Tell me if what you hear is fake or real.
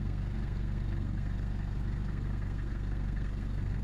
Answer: fake